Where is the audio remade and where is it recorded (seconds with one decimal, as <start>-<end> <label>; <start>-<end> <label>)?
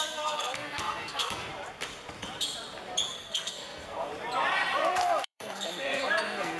0.0-1.5 remade; 1.5-3.1 recorded; 3.1-4.1 remade; 4.1-4.9 recorded; 4.9-6.6 remade